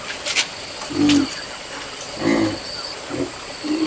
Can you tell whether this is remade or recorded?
recorded